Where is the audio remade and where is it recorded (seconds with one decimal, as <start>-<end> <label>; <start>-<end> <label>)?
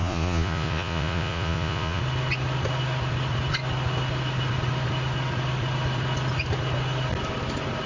0.0-2.0 remade; 2.0-7.9 recorded